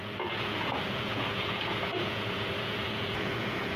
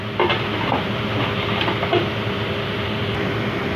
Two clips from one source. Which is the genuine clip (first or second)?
second